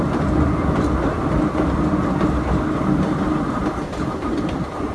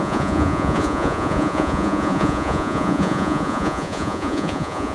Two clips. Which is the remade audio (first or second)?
second